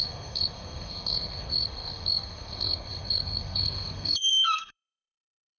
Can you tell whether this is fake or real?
fake